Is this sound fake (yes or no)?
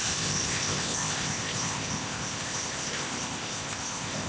yes